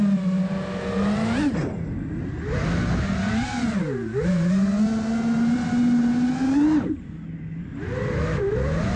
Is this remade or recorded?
recorded